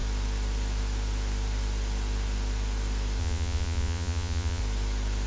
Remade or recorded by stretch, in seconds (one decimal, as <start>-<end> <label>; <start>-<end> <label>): 0.0-3.2 recorded; 3.2-4.6 remade; 4.6-5.3 recorded